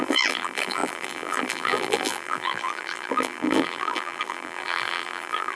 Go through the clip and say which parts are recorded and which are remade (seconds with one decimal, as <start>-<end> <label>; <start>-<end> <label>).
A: 0.0-5.6 remade